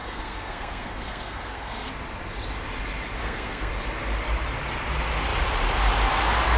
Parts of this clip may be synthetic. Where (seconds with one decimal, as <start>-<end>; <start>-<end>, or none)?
0.0-1.9; 3.2-3.7